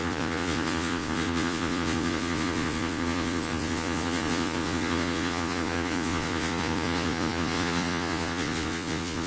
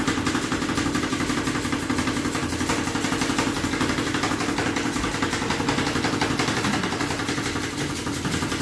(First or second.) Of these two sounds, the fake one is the first